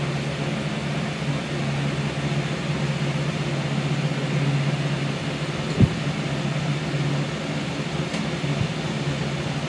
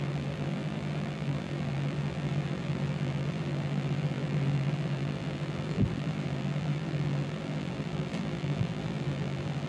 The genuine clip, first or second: first